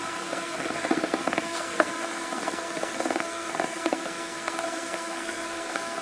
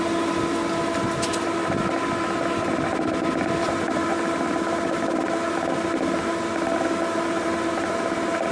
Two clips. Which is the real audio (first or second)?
second